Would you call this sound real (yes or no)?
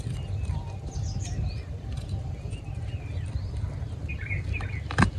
yes